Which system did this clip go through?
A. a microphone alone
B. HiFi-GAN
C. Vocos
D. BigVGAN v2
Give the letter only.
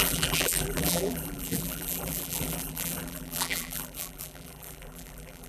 D